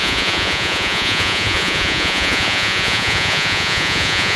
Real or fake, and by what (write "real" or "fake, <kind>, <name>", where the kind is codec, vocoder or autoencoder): fake, vocoder, Vocos